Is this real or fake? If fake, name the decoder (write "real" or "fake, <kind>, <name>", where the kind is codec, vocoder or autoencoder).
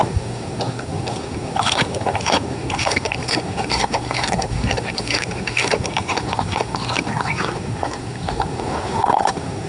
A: fake, codec, SNAC